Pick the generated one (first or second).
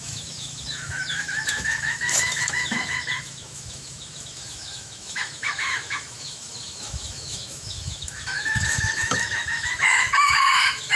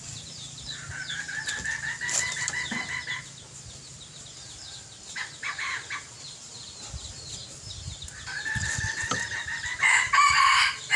first